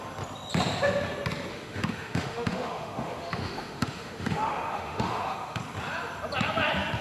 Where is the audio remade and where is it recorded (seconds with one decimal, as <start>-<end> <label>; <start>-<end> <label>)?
0.0-1.5 recorded; 1.5-5.6 remade; 5.6-7.0 recorded